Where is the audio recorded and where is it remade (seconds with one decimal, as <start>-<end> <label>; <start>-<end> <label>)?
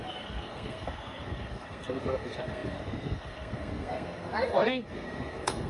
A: 0.0-5.7 remade